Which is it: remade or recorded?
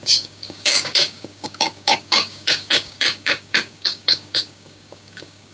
remade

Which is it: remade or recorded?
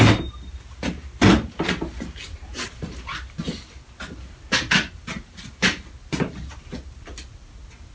recorded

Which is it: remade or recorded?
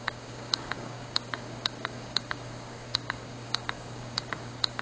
remade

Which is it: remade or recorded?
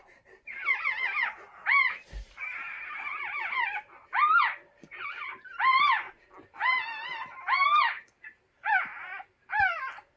recorded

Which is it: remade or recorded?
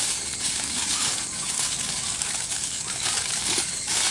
remade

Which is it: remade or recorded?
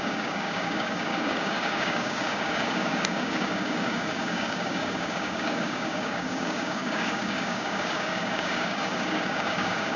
remade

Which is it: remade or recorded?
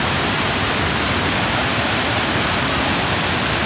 recorded